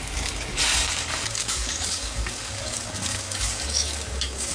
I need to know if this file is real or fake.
fake